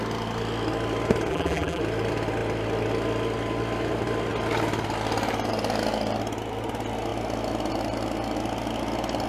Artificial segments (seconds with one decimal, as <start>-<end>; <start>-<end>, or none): 1.3-1.8